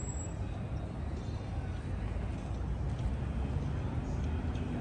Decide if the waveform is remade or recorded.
recorded